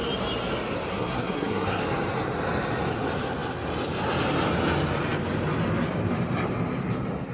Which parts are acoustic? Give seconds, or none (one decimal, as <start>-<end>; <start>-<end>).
0.0-0.9; 1.8-7.3